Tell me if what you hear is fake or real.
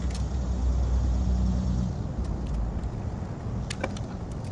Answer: real